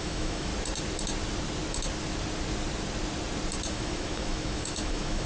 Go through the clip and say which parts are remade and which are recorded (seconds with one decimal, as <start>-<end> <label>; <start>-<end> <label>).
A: 0.0-0.5 remade; 0.5-3.7 recorded; 3.7-5.3 remade